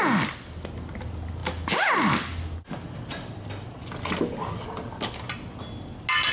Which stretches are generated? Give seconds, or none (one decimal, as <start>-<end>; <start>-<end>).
none